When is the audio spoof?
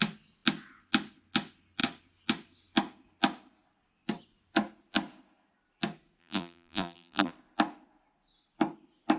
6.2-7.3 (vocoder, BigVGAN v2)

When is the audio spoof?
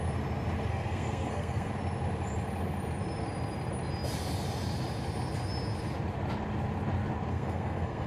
0.7-1.7 (codec, SNAC); 7.3-8.1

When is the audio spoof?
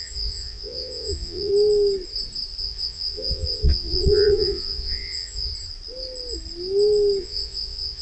0.0-1.5 (vocoder, Vocos); 2.6-5.5; 7.2-8.0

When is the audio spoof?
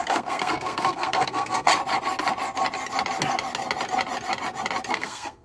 0.0-1.7 (codec, SNAC); 4.9-5.4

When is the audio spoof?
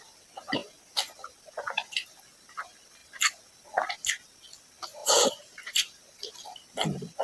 5.0-6.2 (vocoder, BigVGAN v2)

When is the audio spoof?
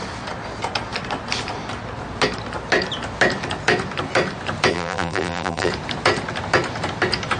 4.7-5.7 (vocoder, BigVGAN v2)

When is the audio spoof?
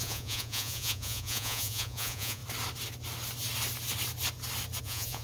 0.0-2.4 (vocoder, Vocos); 4.8-5.2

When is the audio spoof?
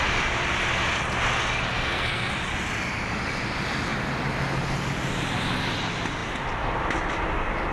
1.7-2.3 (codec, SNAC)